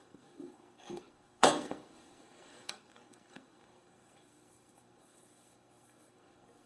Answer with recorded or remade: remade